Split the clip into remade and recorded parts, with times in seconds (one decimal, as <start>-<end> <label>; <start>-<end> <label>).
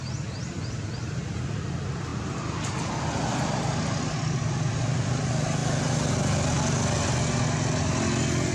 0.0-8.5 recorded